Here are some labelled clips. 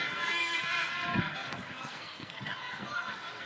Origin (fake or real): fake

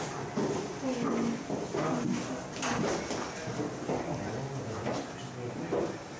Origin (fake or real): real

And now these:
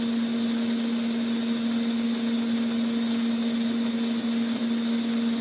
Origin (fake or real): real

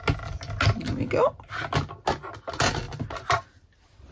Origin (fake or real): real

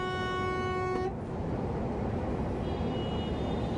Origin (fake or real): real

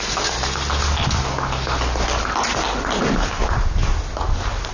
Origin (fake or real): real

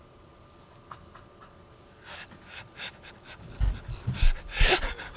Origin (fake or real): real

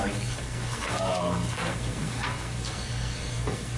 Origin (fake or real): fake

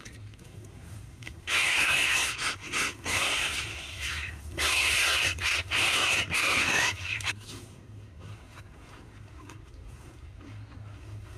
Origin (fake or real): fake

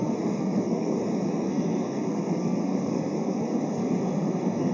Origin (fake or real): fake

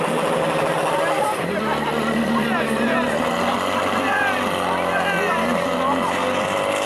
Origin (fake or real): real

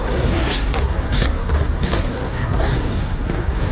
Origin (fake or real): fake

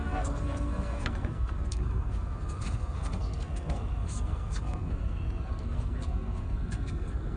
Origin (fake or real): fake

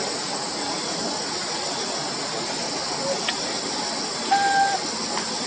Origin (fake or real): real